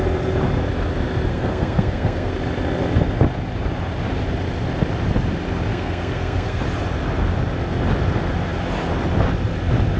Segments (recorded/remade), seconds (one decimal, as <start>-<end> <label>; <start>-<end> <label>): 0.0-1.3 recorded; 1.3-2.3 remade; 2.3-5.7 recorded; 5.7-6.6 remade; 6.6-10.0 recorded